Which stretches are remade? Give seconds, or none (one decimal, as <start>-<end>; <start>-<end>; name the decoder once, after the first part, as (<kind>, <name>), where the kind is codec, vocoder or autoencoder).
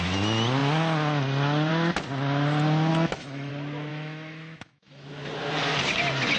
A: 2.9-3.5 (autoencoder, DAC-VAE); 3.9-5.1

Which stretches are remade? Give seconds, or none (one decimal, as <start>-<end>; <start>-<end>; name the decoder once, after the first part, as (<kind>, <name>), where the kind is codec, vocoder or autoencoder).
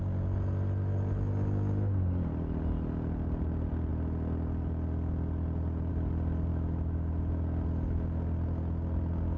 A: 6.5-7.1 (autoencoder, DAC-VAE)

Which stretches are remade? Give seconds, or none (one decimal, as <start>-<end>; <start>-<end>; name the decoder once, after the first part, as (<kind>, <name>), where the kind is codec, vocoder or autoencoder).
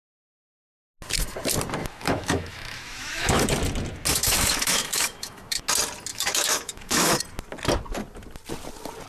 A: 1.8-3.4 (autoencoder, DAC-VAE); 4.1-5.6; 6.1-7.2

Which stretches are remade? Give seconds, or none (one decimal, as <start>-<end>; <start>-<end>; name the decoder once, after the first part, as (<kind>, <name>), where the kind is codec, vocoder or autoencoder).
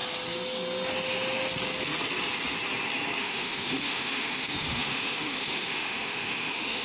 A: 3.2-6.8 (autoencoder, DAC-VAE)